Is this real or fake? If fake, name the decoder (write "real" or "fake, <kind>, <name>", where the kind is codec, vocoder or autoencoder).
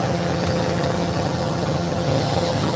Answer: fake, vocoder, HiFi-GAN